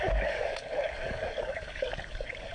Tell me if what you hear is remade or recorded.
remade